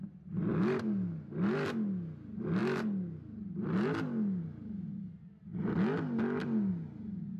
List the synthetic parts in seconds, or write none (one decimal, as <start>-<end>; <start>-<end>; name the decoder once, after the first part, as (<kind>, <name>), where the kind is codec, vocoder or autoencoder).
none